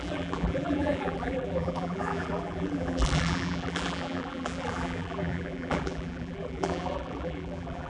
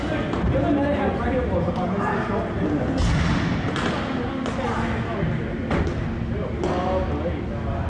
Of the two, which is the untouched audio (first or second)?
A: second